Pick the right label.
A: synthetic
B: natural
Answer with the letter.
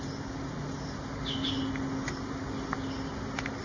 B